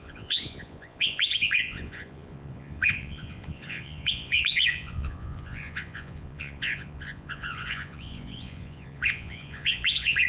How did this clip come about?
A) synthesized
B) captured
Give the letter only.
A